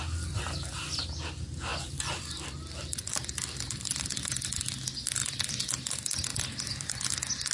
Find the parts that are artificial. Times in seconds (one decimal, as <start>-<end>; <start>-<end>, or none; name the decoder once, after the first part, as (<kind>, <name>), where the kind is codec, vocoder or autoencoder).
1.7-4.6 (vocoder, BigVGAN v2); 5.2-5.7; 6.3-7.1